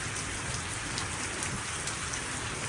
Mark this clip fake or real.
real